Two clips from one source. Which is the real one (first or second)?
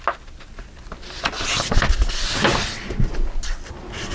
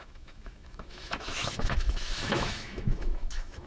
first